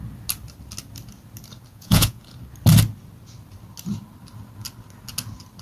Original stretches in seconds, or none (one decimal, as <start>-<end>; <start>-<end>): 0.0-1.7; 2.2-5.6